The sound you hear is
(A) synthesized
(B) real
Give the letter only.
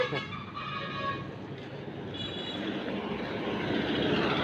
B